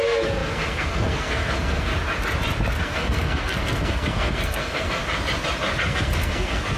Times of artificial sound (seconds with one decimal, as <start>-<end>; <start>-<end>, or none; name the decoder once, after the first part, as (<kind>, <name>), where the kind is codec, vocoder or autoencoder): 0.0-1.9 (codec, SNAC); 2.8-5.0; 5.8-6.8